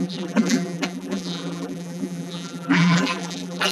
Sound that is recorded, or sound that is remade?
remade